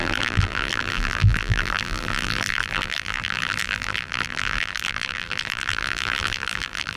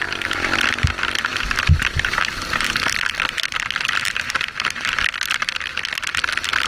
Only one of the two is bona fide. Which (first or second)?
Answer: second